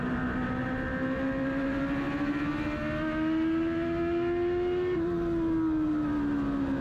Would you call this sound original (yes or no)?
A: yes